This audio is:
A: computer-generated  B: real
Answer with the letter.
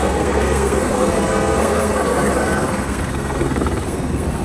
A